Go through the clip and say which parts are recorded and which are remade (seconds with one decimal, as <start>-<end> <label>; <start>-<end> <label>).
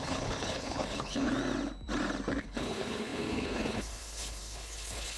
0.0-1.3 remade; 1.3-2.4 recorded; 2.4-5.2 remade